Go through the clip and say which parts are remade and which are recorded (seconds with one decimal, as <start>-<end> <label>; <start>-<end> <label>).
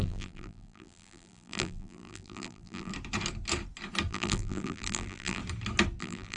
0.0-2.9 remade; 2.9-4.1 recorded; 4.1-5.4 remade; 5.4-6.0 recorded; 6.0-6.4 remade